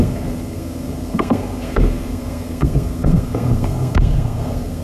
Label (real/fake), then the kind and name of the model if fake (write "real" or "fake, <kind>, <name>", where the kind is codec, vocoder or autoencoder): fake, codec, SNAC